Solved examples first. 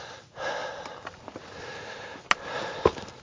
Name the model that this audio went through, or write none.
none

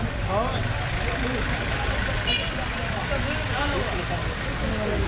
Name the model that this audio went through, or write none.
none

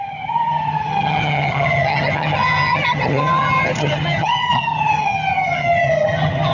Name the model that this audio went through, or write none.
vocoder, HiFi-GAN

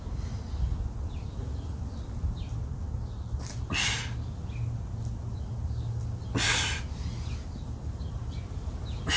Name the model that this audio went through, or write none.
none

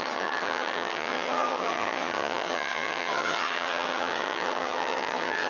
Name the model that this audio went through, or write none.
vocoder, HiFi-GAN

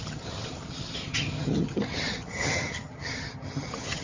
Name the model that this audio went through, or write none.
vocoder, HiFi-GAN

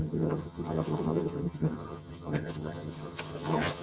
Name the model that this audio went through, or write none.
vocoder, HiFi-GAN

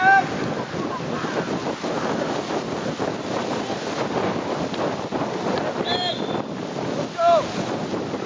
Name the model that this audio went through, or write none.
none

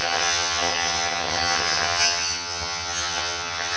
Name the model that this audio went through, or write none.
vocoder, HiFi-GAN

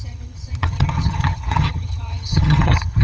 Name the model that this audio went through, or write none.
vocoder, HiFi-GAN